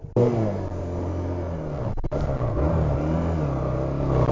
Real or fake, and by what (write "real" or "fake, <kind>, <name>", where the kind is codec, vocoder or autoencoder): real